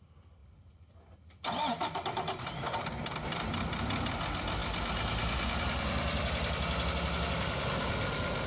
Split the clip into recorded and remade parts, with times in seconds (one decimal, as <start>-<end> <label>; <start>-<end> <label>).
0.0-8.5 recorded